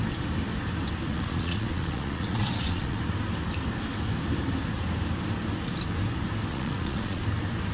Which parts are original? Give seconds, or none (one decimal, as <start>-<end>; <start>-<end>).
0.0-1.1; 3.0-6.5; 7.2-7.7

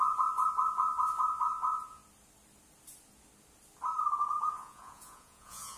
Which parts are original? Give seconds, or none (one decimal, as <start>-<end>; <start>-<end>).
2.0-4.4

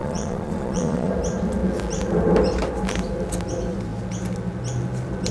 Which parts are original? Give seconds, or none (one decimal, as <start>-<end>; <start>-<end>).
1.1-5.3